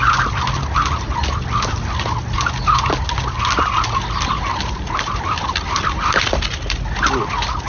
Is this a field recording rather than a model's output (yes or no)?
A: yes